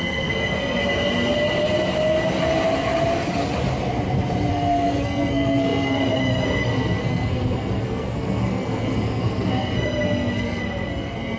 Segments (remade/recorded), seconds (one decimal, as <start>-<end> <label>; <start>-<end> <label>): 0.0-0.8 remade; 0.8-4.5 recorded; 4.5-11.4 remade